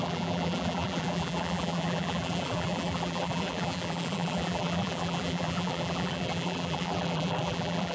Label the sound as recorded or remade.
remade